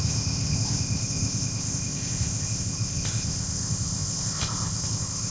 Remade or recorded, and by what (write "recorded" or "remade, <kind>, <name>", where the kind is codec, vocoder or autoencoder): remade, codec, ZipCodec